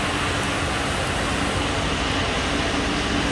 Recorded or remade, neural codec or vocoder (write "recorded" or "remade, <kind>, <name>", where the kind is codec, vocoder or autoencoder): recorded